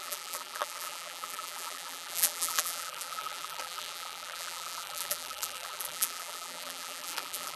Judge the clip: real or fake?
fake